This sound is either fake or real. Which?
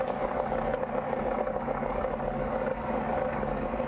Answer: fake